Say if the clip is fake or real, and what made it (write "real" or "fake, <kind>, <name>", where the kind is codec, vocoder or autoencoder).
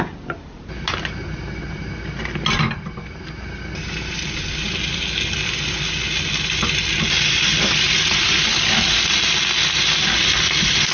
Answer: real